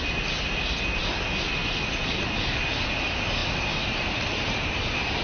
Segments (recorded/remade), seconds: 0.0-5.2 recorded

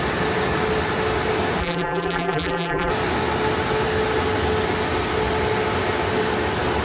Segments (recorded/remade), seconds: 0.0-1.6 recorded; 1.6-2.9 remade; 2.9-6.8 recorded

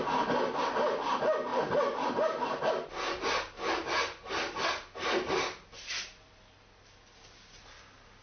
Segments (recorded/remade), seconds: 0.0-1.5 recorded; 1.5-2.7 remade; 2.7-8.2 recorded

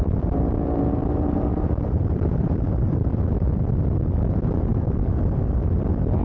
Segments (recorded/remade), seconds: 0.0-1.0 recorded; 1.0-3.5 remade; 3.5-4.7 recorded; 4.7-5.4 remade; 5.4-6.2 recorded

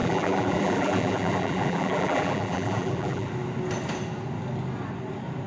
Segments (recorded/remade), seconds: 0.0-3.3 remade; 3.3-5.5 recorded

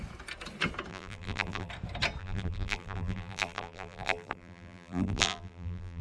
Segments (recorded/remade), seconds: 0.0-0.9 recorded; 0.9-1.7 remade; 1.7-2.2 recorded; 2.2-6.0 remade

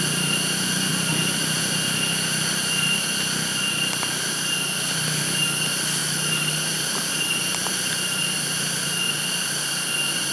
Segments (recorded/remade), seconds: 0.0-0.9 recorded; 0.9-1.6 remade; 1.6-6.0 recorded; 6.0-8.2 remade; 8.2-10.3 recorded